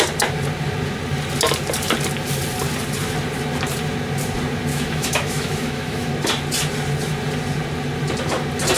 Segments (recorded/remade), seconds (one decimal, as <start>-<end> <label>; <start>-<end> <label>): 0.0-4.7 recorded; 4.7-6.1 remade; 6.1-8.8 recorded

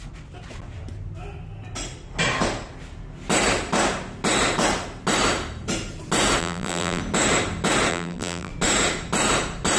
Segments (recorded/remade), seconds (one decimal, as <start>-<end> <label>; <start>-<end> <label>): 0.0-6.4 recorded; 6.4-7.0 remade; 7.0-7.9 recorded; 7.9-8.5 remade; 8.5-9.8 recorded

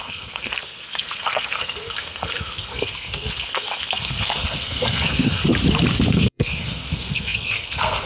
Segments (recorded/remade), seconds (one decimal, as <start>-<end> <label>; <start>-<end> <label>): 0.0-5.5 remade; 5.5-6.1 recorded; 6.1-8.1 remade

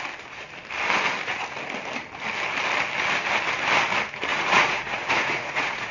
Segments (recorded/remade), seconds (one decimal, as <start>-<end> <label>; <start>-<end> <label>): 0.0-4.3 recorded; 4.3-5.9 remade

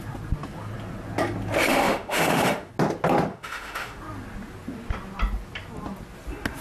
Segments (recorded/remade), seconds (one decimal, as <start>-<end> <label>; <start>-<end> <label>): 0.0-1.7 recorded; 1.7-2.7 remade; 2.7-3.3 recorded; 3.3-4.0 remade; 4.0-6.6 recorded

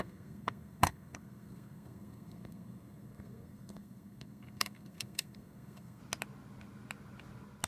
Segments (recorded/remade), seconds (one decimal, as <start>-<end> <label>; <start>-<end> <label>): 0.0-6.0 remade; 6.0-7.7 recorded